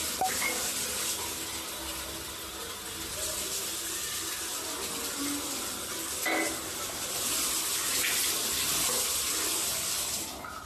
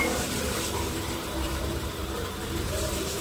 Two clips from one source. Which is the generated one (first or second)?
second